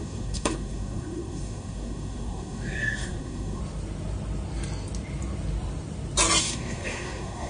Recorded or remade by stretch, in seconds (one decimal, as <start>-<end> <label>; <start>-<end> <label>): 0.0-3.6 remade; 3.6-6.4 recorded; 6.4-7.5 remade